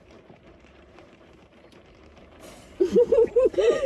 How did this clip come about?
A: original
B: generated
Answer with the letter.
B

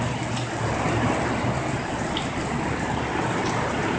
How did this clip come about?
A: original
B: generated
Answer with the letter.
A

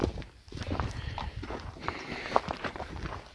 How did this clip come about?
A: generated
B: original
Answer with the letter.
A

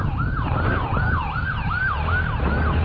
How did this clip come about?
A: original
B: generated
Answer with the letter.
A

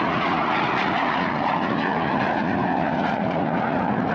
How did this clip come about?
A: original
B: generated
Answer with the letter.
B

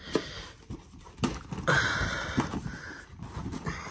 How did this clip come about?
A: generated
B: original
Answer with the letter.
B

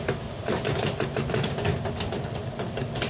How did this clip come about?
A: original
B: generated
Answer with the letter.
A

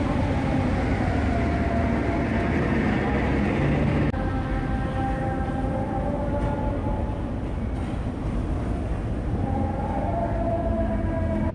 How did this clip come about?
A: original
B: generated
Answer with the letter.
A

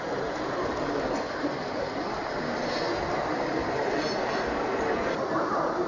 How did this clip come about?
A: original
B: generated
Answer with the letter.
A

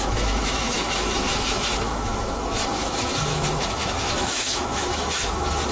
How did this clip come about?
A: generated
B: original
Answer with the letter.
A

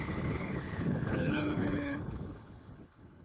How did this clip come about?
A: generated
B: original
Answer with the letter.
A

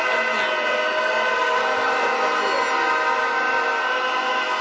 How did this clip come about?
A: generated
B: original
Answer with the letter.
B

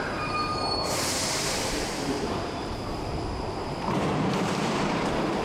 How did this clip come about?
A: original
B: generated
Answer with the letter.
B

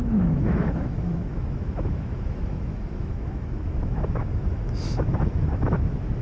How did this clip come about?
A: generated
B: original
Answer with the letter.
A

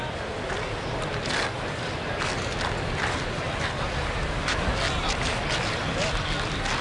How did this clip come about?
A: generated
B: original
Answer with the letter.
B